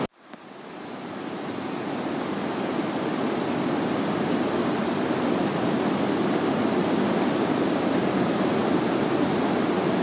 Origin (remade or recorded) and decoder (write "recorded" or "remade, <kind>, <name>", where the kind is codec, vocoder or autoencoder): recorded